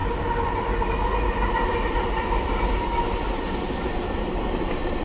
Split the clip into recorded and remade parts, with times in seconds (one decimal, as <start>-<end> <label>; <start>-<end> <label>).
0.0-5.0 recorded